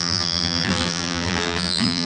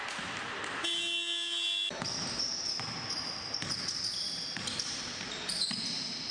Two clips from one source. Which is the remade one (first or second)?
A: first